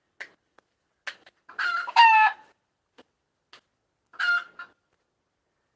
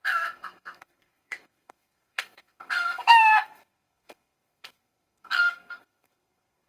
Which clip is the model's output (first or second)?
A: second